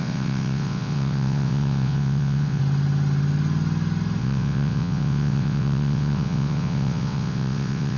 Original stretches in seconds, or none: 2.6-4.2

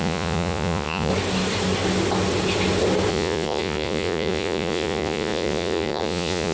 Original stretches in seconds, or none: 1.1-3.1

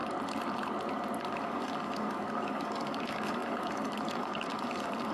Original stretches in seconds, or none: 0.0-1.4

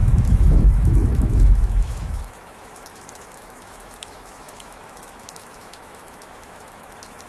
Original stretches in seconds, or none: none

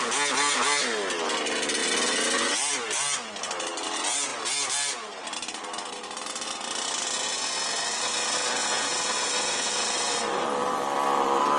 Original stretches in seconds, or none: 0.0-8.6; 9.7-11.6